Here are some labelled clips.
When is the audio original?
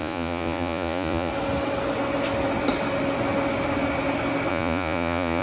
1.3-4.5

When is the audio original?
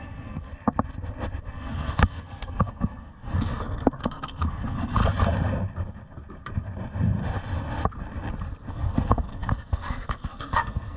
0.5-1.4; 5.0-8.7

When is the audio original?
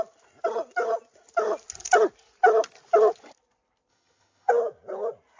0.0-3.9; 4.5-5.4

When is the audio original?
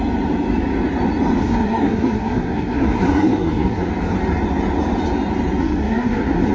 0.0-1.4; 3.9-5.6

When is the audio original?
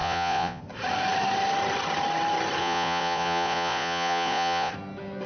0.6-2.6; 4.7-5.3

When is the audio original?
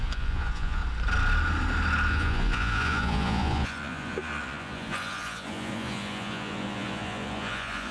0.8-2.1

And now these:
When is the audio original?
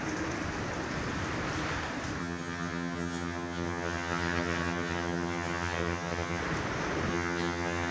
0.0-2.2; 6.4-7.1